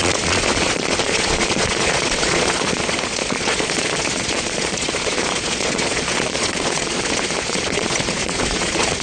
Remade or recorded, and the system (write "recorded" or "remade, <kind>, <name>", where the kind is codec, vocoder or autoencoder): remade, vocoder, Vocos